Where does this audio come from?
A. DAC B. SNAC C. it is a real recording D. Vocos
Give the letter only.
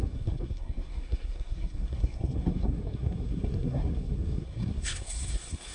B